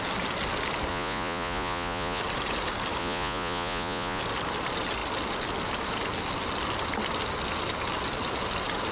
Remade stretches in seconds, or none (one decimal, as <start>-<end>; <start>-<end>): 0.9-2.2; 3.0-4.2